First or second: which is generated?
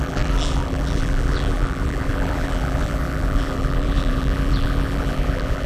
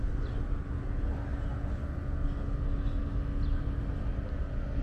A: first